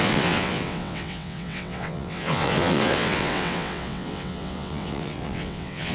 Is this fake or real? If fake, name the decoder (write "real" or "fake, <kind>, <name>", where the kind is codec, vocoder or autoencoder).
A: fake, vocoder, WaveNeXt